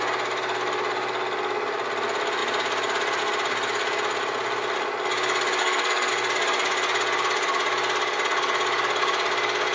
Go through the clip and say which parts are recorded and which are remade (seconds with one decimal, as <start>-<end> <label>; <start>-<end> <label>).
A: 0.0-5.6 recorded; 5.6-6.1 remade; 6.1-9.7 recorded